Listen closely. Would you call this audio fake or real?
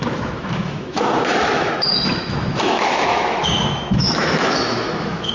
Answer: fake